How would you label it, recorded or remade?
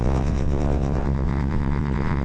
remade